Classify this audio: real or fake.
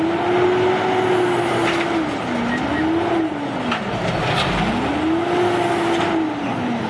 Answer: real